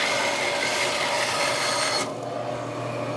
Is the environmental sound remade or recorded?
recorded